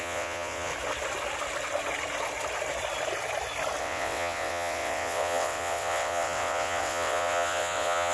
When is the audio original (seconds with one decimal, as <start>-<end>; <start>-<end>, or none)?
0.7-3.8